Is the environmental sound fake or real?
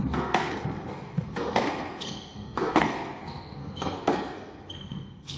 fake